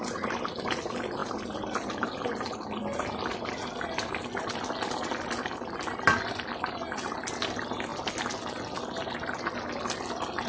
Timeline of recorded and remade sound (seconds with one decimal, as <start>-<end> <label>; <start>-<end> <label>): 0.0-10.5 recorded